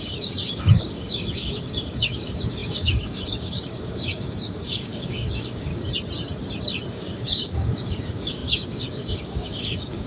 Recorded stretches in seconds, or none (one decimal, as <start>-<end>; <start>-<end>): 5.7-6.9